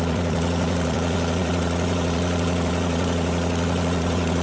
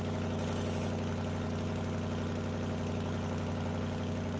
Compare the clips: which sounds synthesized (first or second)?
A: first